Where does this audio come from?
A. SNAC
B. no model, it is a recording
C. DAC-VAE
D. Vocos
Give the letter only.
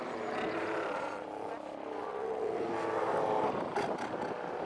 B